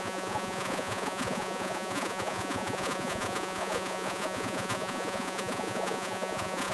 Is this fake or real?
fake